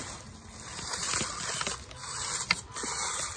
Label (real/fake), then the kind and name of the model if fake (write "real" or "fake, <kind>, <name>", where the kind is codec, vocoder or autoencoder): real